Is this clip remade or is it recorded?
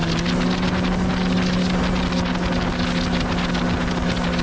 recorded